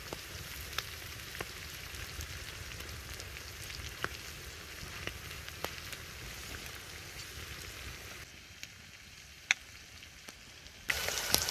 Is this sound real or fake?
real